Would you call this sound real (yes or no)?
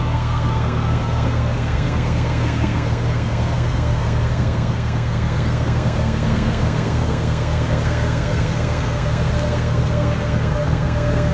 no